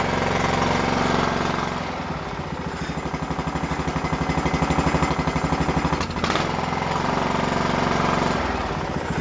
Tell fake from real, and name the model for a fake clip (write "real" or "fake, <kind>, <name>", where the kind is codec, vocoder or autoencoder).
real